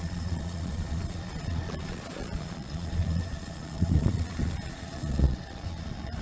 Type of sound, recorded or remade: remade